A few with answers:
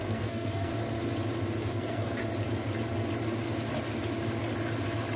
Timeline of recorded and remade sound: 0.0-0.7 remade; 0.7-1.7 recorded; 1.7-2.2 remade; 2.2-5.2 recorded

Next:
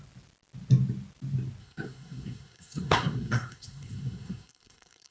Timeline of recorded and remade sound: 0.0-1.6 recorded; 1.6-5.1 remade

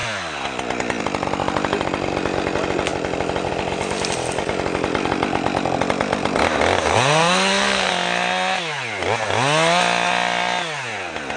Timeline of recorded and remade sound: 0.0-6.9 recorded; 6.9-7.9 remade; 7.9-11.4 recorded

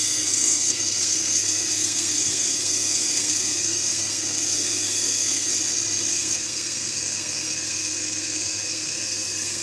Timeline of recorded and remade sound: 0.0-5.5 remade; 5.5-6.1 recorded; 6.1-9.6 remade

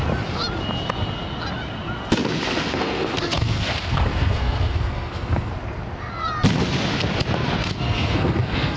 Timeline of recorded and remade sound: 0.0-2.5 recorded; 2.5-5.5 remade; 5.5-7.6 recorded; 7.6-8.8 remade

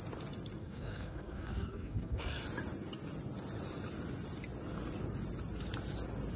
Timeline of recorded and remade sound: 0.0-0.6 recorded; 0.6-2.4 remade; 2.4-6.4 recorded